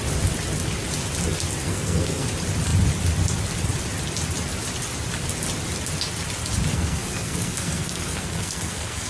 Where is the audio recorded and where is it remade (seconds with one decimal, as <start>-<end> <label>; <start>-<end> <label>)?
0.0-1.6 recorded; 1.6-2.3 remade; 2.3-6.7 recorded; 6.7-9.1 remade